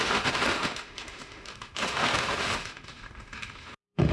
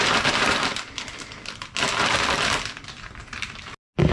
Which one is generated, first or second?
first